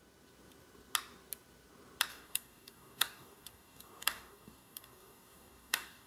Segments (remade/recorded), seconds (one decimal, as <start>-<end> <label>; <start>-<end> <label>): 0.0-2.1 recorded; 2.1-6.1 remade